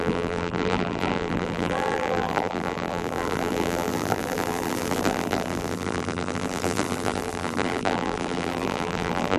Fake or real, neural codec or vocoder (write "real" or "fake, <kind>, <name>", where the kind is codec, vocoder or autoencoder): fake, vocoder, BigVGAN v2